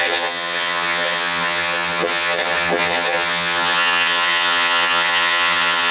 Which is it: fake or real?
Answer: fake